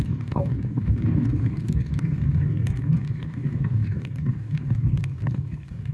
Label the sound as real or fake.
fake